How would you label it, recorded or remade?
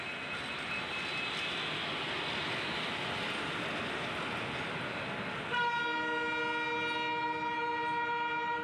recorded